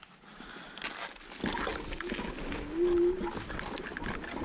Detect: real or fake real